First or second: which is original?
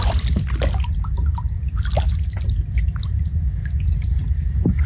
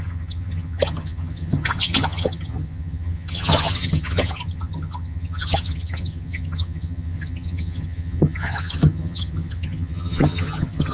first